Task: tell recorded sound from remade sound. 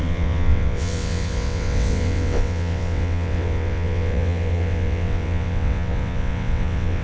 remade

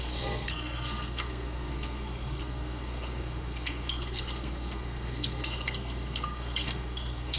remade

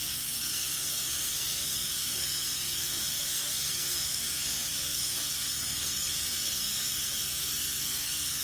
remade